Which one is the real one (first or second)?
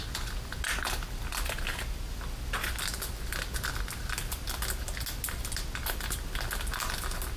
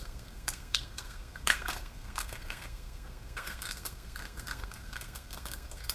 first